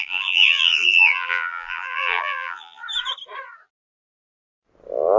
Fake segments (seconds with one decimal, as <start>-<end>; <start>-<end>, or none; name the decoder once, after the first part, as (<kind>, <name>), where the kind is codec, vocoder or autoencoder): 0.0-2.8 (vocoder, BigVGAN v2)